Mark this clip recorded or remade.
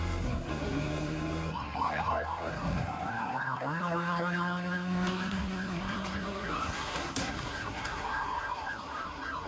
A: remade